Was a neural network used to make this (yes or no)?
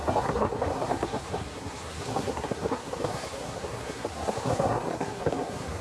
yes